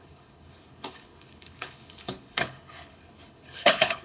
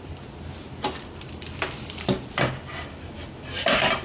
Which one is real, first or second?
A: second